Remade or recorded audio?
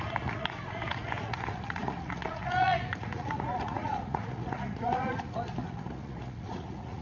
remade